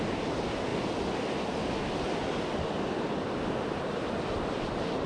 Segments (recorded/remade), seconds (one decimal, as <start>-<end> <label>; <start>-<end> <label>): 0.0-5.1 recorded